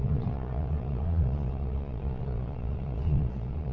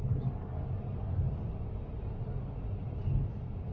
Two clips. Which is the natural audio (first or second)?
second